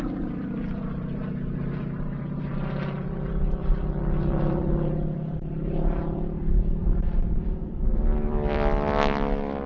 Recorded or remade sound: remade